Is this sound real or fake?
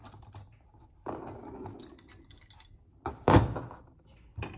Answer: real